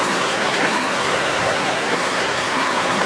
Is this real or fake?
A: fake